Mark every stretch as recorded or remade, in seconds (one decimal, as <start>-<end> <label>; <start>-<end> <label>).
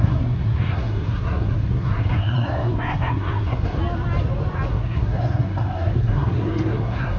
0.0-3.8 remade; 3.8-4.7 recorded; 4.7-7.2 remade